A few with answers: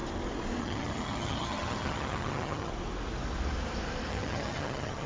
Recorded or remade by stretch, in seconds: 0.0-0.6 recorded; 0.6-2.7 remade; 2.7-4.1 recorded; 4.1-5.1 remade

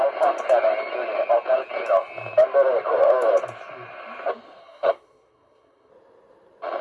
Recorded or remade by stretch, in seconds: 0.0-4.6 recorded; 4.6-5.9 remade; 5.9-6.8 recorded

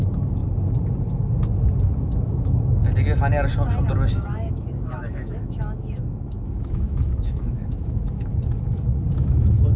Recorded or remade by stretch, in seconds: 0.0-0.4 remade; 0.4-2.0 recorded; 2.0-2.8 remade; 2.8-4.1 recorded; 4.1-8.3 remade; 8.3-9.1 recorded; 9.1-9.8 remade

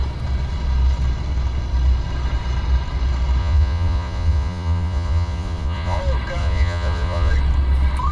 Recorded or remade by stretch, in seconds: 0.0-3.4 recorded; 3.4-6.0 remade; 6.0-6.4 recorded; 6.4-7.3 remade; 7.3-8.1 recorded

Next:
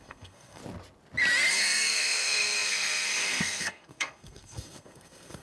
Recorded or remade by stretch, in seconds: 0.0-0.6 remade; 0.6-1.5 recorded; 1.5-5.4 remade

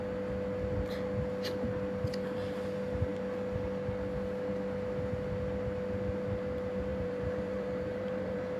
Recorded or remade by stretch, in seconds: 0.0-6.9 recorded; 6.9-8.6 remade

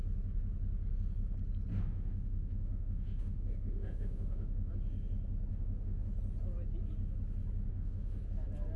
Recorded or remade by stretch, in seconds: 0.0-1.7 recorded; 1.7-4.7 remade; 4.7-5.5 recorded; 5.5-6.1 remade; 6.1-7.7 recorded; 7.7-8.2 remade; 8.2-8.8 recorded